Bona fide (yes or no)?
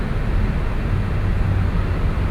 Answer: yes